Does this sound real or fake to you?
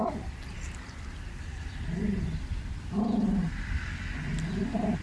fake